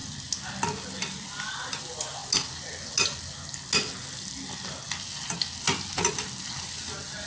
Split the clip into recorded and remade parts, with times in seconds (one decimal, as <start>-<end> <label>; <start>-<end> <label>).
0.0-7.3 recorded